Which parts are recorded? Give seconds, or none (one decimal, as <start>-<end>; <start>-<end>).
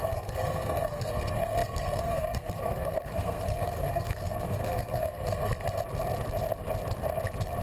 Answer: 5.5-7.6